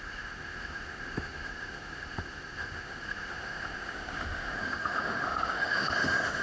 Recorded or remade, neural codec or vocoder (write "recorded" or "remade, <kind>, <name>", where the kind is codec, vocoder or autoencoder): remade, autoencoder, DAC-VAE